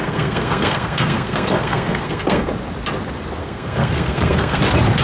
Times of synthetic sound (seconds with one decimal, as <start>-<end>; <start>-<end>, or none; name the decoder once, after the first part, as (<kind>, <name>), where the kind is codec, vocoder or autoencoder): 0.0-2.5 (codec, SNAC); 3.4-4.6